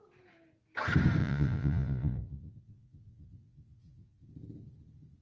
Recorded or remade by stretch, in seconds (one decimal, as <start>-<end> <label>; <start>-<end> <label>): 0.0-1.2 recorded; 1.2-4.3 remade; 4.3-5.2 recorded